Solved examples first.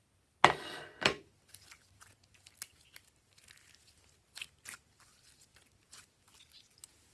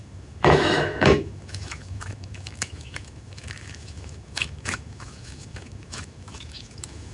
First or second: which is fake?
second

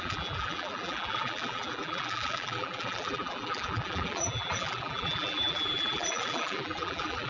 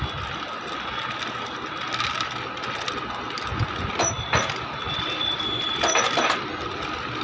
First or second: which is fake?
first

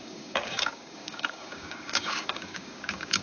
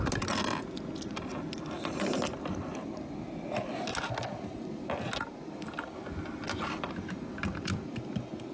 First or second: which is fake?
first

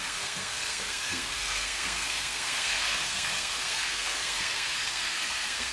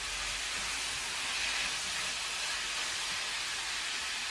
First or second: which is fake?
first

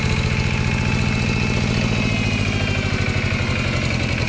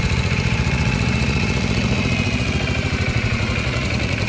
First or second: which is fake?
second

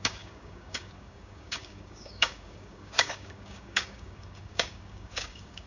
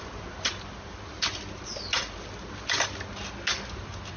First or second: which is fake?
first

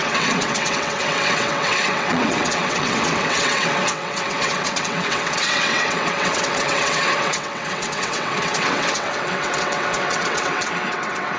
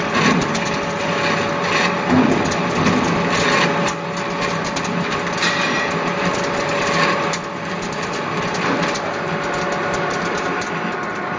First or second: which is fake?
first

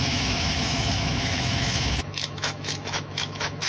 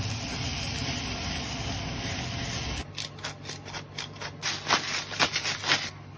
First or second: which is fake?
first